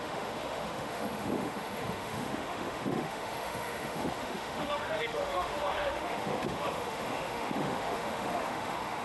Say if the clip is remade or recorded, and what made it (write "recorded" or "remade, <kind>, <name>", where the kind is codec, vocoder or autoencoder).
remade, autoencoder, DAC-VAE